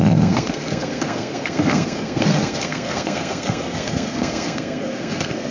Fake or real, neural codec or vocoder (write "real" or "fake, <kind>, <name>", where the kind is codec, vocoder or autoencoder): fake, codec, SNAC